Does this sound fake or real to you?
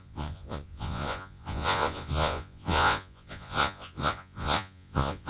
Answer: fake